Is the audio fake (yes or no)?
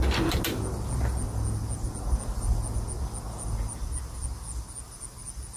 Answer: no